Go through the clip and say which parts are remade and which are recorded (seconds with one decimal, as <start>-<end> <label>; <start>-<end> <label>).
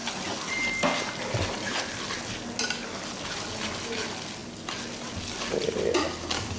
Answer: 0.0-6.6 recorded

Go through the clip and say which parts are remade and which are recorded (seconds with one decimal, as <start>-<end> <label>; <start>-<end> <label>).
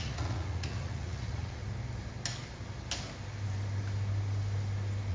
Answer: 0.0-1.6 remade; 1.6-5.1 recorded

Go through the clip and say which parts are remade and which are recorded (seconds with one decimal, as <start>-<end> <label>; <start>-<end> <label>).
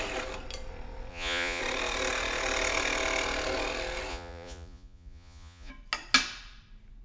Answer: 0.0-1.1 recorded; 1.1-1.6 remade; 1.6-4.1 recorded; 4.1-5.7 remade; 5.7-7.0 recorded